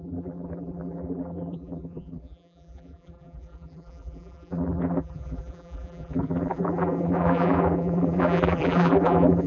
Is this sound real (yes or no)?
no